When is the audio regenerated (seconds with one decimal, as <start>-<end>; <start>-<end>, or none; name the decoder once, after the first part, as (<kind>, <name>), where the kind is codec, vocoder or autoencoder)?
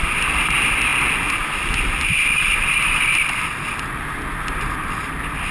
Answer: 0.0-0.9 (vocoder, BigVGAN v2); 1.5-5.5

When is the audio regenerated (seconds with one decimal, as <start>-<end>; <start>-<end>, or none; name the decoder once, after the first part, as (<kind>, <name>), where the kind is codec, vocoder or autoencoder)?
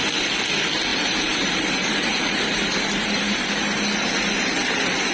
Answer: 0.9-3.5 (vocoder, BigVGAN v2)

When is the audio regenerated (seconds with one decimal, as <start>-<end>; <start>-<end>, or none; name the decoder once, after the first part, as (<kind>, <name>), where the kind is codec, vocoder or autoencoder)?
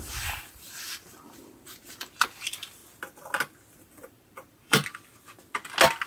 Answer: 0.0-2.8 (vocoder, BigVGAN v2); 3.7-4.8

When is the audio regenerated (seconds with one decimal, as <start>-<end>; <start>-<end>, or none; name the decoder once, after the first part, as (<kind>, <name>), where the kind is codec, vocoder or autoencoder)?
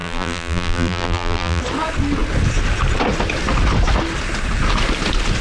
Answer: 0.0-1.6 (vocoder, BigVGAN v2)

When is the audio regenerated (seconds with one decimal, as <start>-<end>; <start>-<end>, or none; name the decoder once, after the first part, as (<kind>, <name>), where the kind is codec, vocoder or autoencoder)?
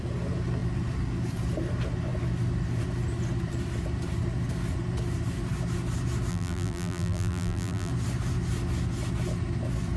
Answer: 6.3-7.9 (vocoder, BigVGAN v2)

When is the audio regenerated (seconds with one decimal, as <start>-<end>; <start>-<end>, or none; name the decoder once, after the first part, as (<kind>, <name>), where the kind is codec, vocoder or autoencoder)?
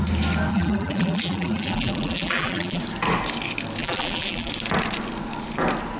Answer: 0.5-2.8 (vocoder, BigVGAN v2); 3.8-4.5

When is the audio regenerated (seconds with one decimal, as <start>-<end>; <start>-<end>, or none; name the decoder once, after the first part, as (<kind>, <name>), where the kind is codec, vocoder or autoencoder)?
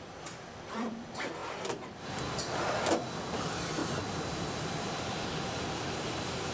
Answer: 0.0-6.5 (vocoder, BigVGAN v2)